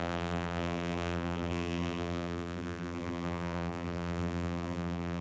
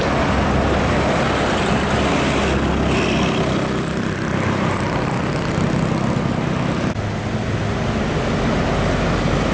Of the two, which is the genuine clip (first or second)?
second